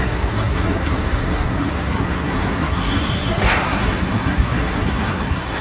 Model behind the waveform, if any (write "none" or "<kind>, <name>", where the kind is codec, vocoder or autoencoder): codec, SNAC